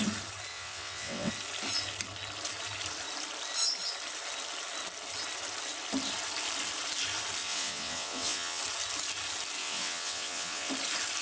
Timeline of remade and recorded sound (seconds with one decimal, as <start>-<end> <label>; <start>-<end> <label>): 0.0-0.5 recorded; 0.5-1.3 remade; 1.3-7.4 recorded; 7.4-8.6 remade; 8.6-9.6 recorded; 9.6-10.7 remade; 10.7-11.2 recorded